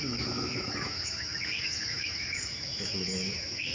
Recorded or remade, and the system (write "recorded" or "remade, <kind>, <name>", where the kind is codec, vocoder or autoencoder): remade, autoencoder, DAC-VAE